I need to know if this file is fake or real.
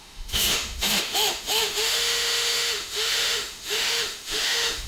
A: fake